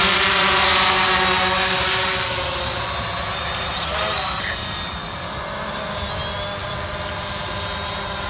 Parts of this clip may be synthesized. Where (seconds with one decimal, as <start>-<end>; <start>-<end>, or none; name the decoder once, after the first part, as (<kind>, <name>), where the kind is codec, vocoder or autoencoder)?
none